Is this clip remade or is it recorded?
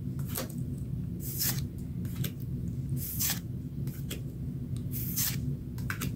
recorded